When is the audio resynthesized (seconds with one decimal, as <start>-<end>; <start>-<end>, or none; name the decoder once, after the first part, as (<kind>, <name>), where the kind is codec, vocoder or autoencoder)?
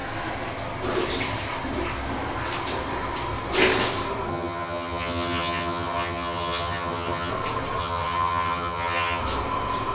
4.3-7.3 (vocoder, HiFi-GAN); 7.8-9.2